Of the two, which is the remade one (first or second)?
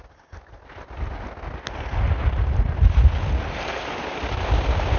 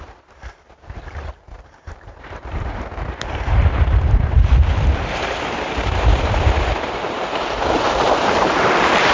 second